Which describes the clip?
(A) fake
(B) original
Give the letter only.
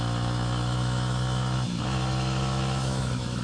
A